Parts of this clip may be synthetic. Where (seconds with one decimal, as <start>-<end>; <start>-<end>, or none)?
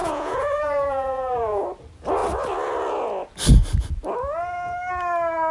0.0-1.6